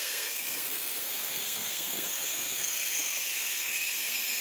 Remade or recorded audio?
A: remade